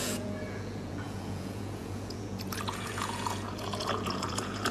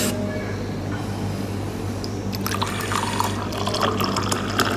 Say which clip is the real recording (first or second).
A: second